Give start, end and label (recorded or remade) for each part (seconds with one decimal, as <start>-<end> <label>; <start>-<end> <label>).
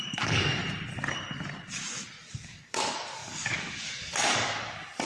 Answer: 0.0-0.6 remade; 0.6-2.3 recorded; 2.3-5.1 remade